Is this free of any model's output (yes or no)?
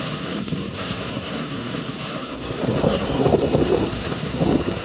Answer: no